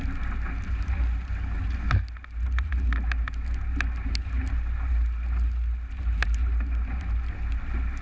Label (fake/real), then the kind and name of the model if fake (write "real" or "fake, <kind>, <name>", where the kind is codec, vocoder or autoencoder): real